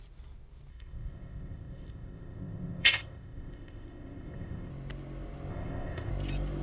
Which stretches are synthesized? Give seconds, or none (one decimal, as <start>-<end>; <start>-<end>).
0.7-4.7; 5.5-6.1